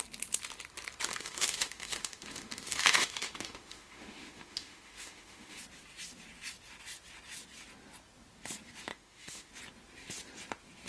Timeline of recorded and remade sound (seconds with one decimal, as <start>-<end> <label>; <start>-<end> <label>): 0.0-1.1 recorded; 1.1-5.6 remade; 5.6-8.9 recorded; 8.9-9.5 remade; 9.5-10.9 recorded

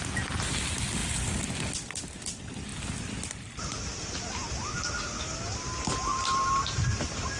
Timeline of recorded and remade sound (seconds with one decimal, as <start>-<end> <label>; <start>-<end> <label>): 0.0-7.4 recorded